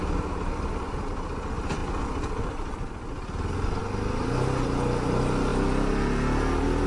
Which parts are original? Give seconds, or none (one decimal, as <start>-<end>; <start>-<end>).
0.0-6.9